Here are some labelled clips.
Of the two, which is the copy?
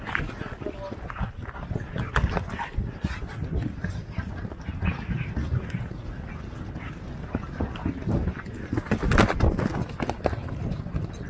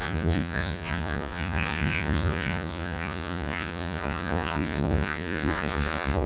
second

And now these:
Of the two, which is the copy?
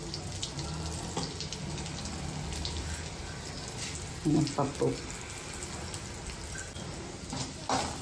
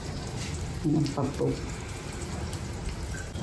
second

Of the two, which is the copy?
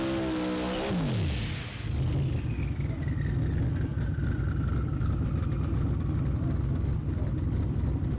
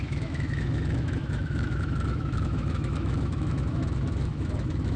second